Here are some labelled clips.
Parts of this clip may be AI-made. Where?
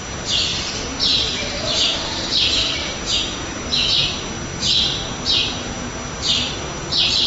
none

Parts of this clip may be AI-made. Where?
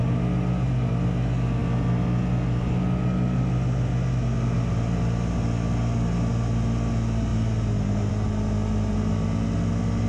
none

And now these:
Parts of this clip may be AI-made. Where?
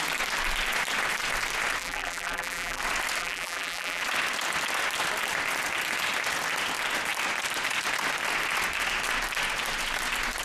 1.8-2.8 (vocoder, BigVGAN v2); 3.2-4.0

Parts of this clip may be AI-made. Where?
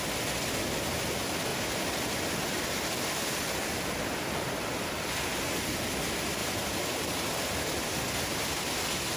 1.5-5.1 (vocoder, BigVGAN v2); 6.4-7.0